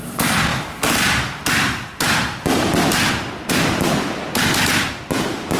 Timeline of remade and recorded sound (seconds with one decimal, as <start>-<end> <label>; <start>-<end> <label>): 0.0-5.6 recorded

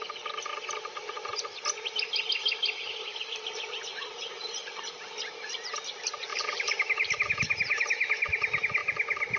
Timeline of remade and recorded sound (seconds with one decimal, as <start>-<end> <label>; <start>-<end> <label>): 0.0-6.3 recorded; 6.3-6.8 remade; 6.8-9.4 recorded

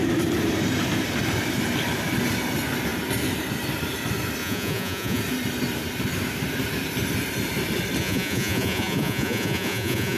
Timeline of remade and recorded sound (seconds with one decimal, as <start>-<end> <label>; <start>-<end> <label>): 0.0-4.4 recorded; 4.4-5.2 remade; 5.2-8.0 recorded; 8.0-10.2 remade

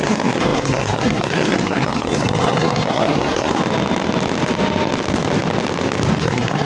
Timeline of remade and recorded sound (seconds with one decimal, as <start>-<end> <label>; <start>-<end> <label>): 0.0-3.6 remade; 3.6-6.2 recorded; 6.2-6.7 remade

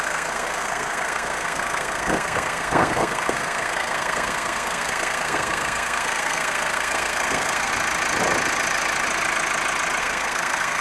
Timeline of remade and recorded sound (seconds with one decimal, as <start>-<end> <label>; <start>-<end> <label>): 0.0-7.7 remade; 7.7-10.0 recorded; 10.0-10.8 remade

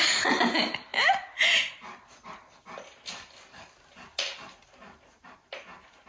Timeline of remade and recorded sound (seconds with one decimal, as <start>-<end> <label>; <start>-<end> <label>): 0.0-6.1 recorded

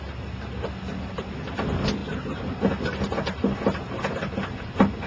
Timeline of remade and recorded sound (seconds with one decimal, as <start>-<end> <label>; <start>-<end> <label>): 0.0-5.1 recorded

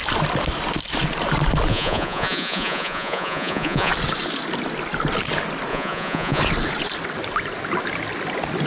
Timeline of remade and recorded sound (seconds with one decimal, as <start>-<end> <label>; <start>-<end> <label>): 0.0-1.7 recorded; 1.7-3.9 remade; 3.9-5.7 recorded; 5.7-6.4 remade; 6.4-8.7 recorded